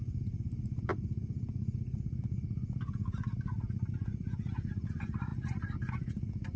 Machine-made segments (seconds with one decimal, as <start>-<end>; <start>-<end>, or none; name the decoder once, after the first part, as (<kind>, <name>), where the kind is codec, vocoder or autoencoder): none